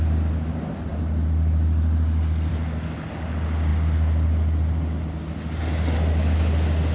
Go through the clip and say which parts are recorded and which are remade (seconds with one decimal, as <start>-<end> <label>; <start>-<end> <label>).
0.0-6.9 recorded